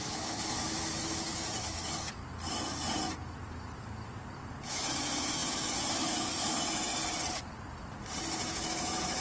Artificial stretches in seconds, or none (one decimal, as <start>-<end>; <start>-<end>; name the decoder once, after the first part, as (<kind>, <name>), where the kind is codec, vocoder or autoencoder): 0.0-2.2 (autoencoder, DAC-VAE); 4.7-6.9; 8.2-9.2